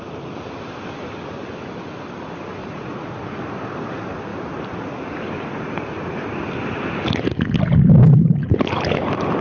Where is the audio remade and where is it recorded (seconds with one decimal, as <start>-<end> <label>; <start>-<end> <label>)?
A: 0.0-2.6 recorded; 2.6-3.4 remade; 3.4-9.4 recorded